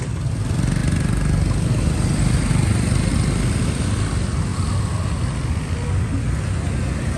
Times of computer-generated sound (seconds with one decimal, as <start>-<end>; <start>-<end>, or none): none